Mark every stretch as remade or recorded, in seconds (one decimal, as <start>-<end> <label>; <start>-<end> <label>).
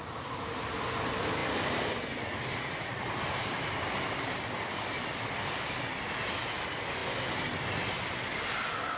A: 0.0-9.0 recorded